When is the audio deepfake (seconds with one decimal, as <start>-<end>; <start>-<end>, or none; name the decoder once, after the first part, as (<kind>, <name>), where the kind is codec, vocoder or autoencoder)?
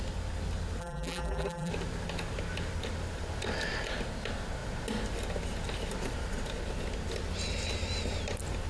0.8-1.7 (vocoder, BigVGAN v2)